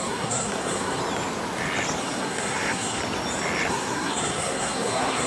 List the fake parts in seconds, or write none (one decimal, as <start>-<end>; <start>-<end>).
0.0-1.0; 2.0-3.0; 3.7-5.3